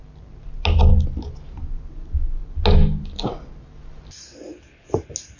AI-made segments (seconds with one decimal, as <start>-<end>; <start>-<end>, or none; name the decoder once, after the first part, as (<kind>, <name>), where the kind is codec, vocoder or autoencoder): none